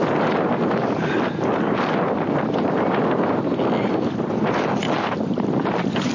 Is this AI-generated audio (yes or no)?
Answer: no